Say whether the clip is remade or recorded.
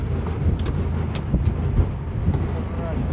recorded